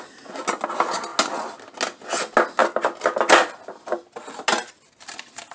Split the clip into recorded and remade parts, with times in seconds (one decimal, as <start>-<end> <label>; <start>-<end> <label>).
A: 0.0-5.5 recorded